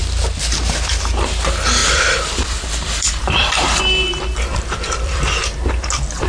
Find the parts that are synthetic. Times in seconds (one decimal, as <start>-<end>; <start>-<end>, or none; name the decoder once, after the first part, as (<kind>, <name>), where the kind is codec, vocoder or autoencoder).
1.8-3.8 (vocoder, BigVGAN v2); 4.5-5.2